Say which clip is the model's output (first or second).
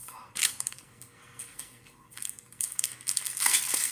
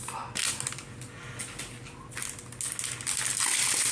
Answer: first